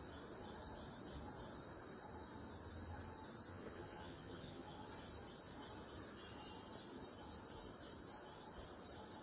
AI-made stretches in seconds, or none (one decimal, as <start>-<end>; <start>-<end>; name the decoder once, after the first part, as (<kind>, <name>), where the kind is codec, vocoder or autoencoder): 3.5-4.9 (vocoder, HiFi-GAN)